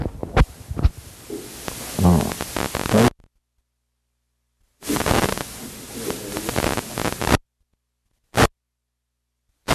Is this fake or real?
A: real